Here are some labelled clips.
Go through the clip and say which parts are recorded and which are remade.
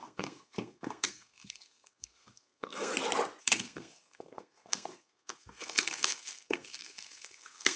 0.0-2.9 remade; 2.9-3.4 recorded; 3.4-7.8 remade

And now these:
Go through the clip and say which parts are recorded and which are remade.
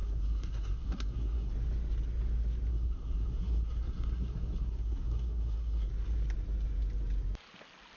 0.0-1.5 remade; 1.5-2.7 recorded; 2.7-5.9 remade; 5.9-8.0 recorded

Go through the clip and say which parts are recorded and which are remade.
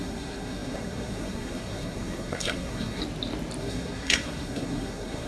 0.0-3.0 remade; 3.0-3.6 recorded; 3.6-5.3 remade